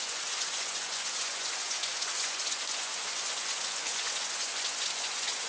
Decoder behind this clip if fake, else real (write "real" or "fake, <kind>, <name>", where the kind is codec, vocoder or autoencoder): fake, vocoder, Vocos